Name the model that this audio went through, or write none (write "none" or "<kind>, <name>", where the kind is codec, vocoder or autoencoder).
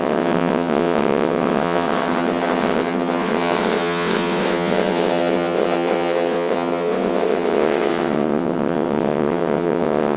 vocoder, WaveNeXt